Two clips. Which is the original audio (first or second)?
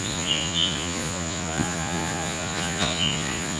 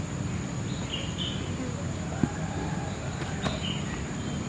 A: second